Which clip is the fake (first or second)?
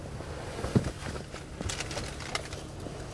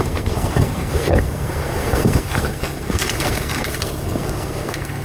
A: second